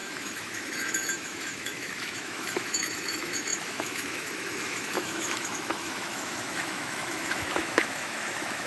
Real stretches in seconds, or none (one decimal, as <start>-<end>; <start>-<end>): none